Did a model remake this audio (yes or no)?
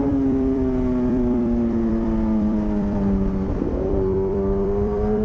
yes